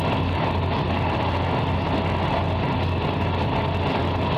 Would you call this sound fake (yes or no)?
no